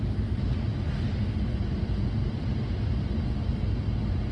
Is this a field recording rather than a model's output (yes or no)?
yes